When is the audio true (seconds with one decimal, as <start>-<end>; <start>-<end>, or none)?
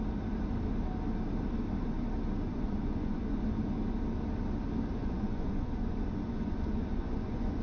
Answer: 0.0-2.5; 3.4-5.0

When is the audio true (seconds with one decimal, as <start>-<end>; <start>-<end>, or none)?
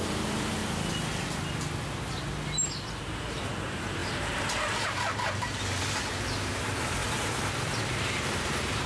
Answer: 0.6-3.0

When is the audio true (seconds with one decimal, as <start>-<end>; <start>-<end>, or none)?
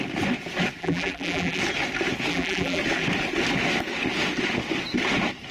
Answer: 0.0-0.8; 1.6-2.3; 2.8-5.5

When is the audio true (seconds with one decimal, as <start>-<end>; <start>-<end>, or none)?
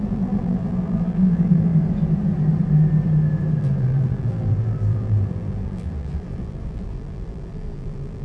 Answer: 1.7-3.6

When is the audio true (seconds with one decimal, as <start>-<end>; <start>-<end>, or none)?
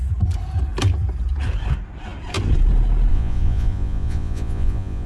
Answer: 0.0-3.1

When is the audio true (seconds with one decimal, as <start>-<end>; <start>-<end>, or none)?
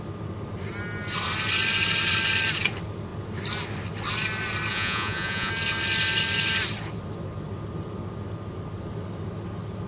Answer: 0.0-4.7; 5.5-9.9